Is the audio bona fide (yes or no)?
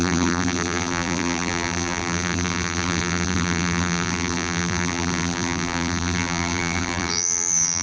no